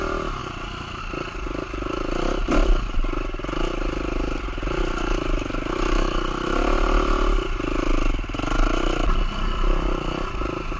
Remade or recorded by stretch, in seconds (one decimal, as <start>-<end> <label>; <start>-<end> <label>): 0.0-10.8 recorded